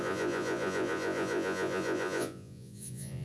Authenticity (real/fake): fake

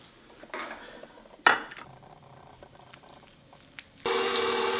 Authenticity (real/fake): real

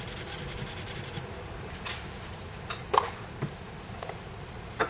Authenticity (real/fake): real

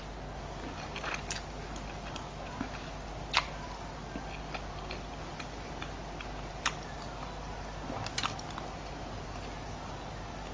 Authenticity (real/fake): real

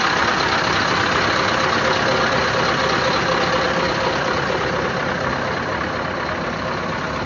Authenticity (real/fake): real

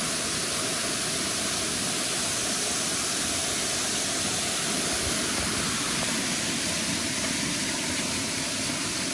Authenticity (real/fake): real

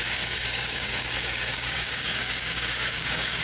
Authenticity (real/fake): fake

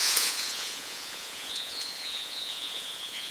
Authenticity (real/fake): fake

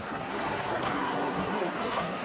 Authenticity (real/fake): fake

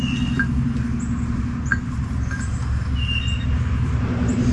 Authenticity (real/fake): real